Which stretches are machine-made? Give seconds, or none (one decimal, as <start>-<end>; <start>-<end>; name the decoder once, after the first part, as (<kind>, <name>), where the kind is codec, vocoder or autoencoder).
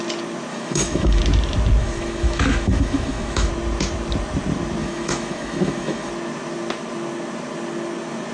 0.5-1.2 (autoencoder, DAC-VAE); 1.8-3.5; 4.8-6.1